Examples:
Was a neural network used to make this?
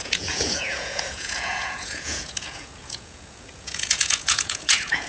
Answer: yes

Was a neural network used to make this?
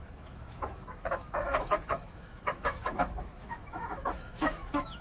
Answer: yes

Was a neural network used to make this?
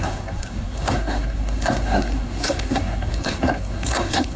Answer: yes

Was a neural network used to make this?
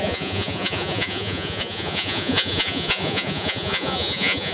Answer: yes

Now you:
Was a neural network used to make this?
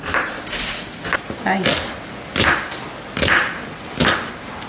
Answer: no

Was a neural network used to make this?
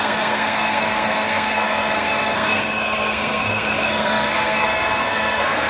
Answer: yes